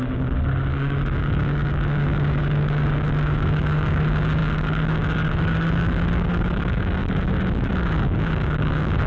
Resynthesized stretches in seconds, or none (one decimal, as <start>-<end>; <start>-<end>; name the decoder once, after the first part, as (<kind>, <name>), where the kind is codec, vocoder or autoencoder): 0.0-9.1 (codec, DAC)